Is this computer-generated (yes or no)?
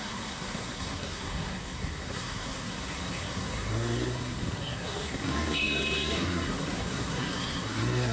yes